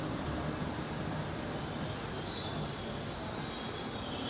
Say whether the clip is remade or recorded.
recorded